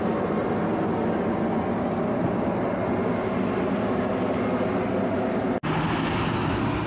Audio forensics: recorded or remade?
recorded